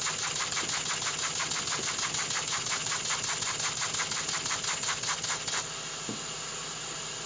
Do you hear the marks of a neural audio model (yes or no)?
no